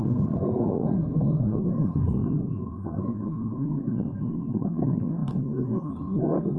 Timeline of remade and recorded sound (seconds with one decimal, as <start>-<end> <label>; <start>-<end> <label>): 0.0-6.6 remade